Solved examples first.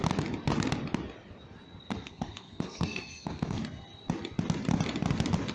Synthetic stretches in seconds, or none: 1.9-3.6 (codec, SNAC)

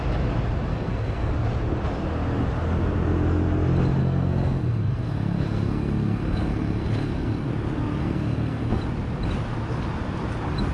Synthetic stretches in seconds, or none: 0.7-1.3 (codec, SNAC); 4.0-7.5; 8.0-8.8

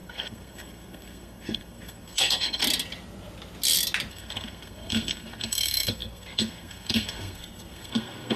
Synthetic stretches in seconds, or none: 0.0-2.6 (codec, SNAC); 4.1-8.4

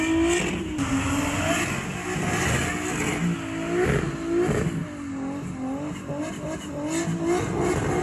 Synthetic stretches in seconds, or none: none

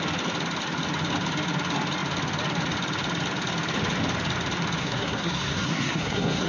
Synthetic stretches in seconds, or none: 4.8-6.5 (codec, SNAC)

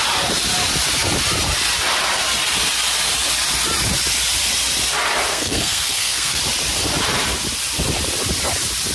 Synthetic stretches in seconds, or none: 5.3-6.4 (codec, SNAC)